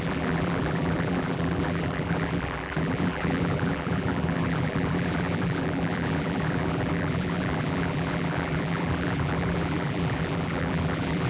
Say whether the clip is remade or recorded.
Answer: remade